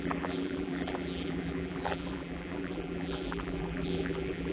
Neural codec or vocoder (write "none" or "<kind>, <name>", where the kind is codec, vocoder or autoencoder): vocoder, BigVGAN v2